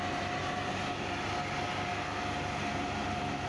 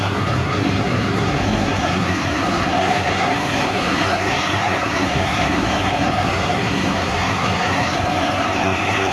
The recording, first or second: first